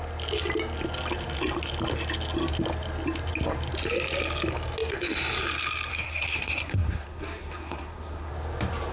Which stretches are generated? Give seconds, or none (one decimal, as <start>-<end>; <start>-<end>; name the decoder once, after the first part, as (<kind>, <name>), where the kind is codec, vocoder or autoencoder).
5.9-8.3 (codec, SNAC)